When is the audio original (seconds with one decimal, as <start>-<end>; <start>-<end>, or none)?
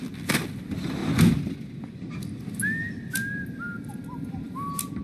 0.0-5.0